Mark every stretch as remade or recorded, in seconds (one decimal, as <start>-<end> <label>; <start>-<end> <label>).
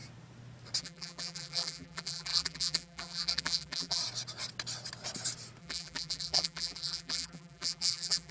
0.0-0.8 recorded; 0.8-4.0 remade; 4.0-5.6 recorded; 5.6-8.3 remade